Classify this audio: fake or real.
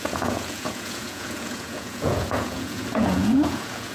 fake